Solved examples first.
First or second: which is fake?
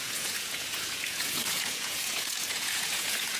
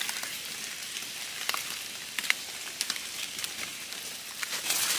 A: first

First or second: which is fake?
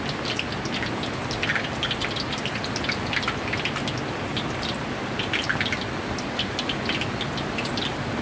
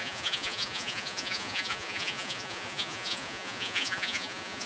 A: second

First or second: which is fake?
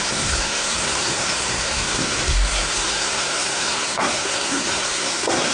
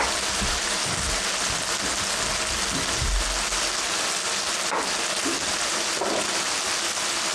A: first